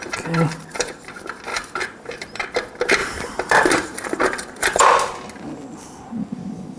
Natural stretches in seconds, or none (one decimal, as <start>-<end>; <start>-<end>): 0.0-0.5; 1.1-1.5; 2.1-3.0; 4.8-6.8